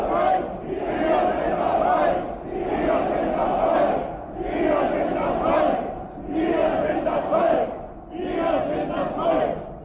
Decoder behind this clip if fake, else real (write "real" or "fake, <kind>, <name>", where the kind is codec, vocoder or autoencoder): real